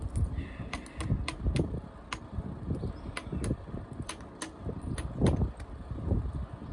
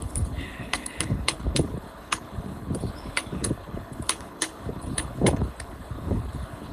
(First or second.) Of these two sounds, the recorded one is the first